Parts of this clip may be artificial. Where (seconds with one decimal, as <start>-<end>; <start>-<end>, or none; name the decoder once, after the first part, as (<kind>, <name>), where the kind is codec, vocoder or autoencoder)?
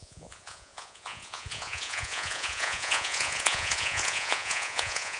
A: 0.0-5.2 (vocoder, Vocos)